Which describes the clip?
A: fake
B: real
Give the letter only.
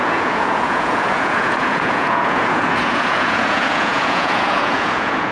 A